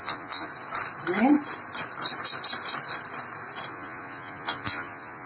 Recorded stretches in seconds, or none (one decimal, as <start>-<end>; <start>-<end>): 0.5-3.7